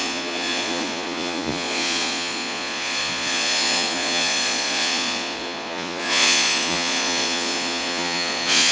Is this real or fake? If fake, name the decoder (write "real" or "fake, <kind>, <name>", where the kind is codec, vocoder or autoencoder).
fake, vocoder, Vocos